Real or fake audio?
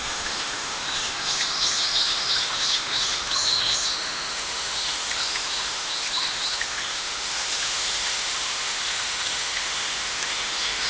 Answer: fake